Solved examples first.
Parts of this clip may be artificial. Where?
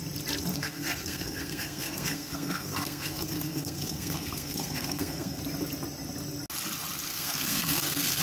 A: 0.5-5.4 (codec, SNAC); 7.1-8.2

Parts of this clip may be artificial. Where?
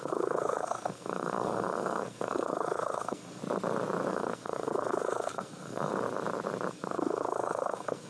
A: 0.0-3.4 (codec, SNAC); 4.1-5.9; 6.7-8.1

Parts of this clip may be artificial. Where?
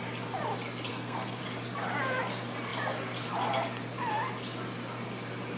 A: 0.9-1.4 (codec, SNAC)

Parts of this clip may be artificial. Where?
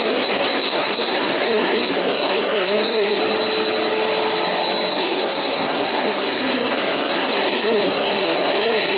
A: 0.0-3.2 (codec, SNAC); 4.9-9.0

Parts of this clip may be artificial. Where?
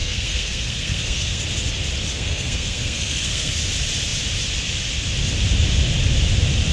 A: 0.0-1.4 (codec, SNAC); 2.1-3.5